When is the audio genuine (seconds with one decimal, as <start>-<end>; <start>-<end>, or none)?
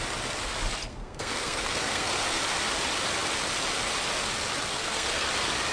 0.0-0.9; 2.4-4.7; 5.3-5.7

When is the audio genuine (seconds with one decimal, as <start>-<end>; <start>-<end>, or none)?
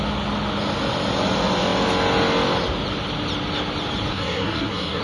0.0-4.1